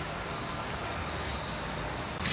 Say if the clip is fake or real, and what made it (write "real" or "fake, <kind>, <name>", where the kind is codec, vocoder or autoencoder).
real